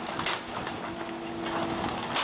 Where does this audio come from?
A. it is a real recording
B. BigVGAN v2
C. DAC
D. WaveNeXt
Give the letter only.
A